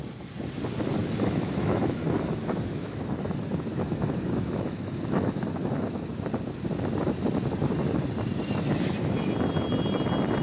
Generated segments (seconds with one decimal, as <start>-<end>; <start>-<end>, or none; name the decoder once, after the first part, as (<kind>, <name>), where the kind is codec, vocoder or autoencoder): 1.0-6.1 (autoencoder, DAC-VAE)